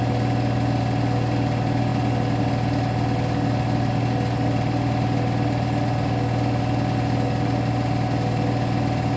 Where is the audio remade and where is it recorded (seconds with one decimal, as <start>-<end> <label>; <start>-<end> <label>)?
0.0-9.2 recorded